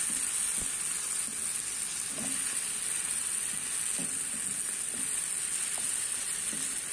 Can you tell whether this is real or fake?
real